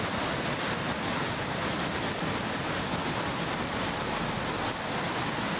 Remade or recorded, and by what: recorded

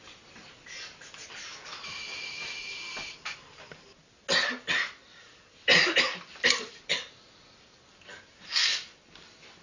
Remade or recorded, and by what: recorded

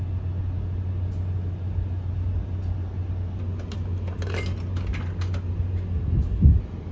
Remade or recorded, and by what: recorded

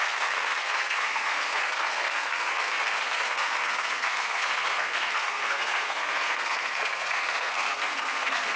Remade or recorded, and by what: remade, codec, SNAC